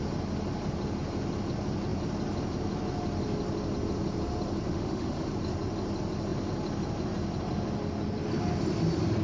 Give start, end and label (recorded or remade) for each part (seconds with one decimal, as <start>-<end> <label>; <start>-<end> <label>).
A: 0.0-4.7 recorded; 4.7-5.3 remade; 5.3-9.2 recorded